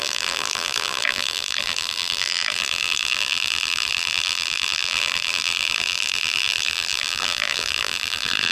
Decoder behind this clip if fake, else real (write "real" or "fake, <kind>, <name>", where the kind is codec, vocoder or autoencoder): fake, vocoder, BigVGAN v2